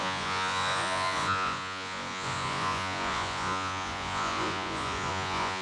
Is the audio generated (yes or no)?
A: yes